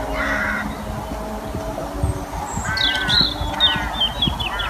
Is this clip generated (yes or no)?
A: no